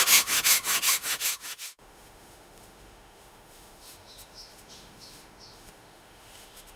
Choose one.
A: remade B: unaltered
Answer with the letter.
A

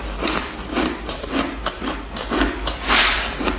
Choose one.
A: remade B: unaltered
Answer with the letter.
B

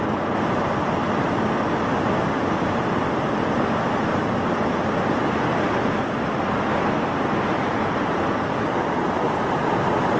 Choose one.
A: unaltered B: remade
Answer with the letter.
A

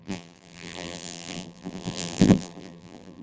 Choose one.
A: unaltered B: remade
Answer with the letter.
B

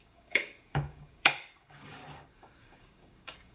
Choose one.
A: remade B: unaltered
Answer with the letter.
A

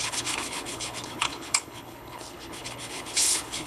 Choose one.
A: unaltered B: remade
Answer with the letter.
B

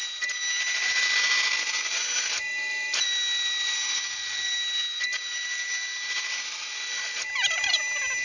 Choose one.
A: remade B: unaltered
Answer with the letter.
B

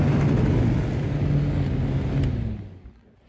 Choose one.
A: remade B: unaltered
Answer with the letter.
B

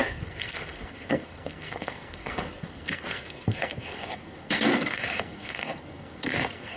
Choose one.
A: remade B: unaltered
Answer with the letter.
A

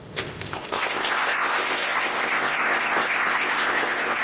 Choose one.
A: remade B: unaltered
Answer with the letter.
A